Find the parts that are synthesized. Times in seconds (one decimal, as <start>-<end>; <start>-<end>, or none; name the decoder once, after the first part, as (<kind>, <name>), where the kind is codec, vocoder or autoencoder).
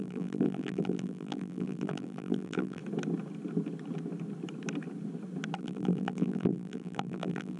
0.0-2.8 (vocoder, BigVGAN v2); 5.6-7.6